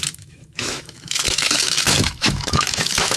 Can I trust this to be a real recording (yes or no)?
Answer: no